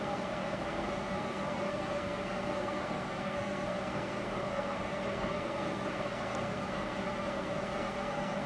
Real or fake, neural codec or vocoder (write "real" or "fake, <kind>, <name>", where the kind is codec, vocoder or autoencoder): fake, codec, SNAC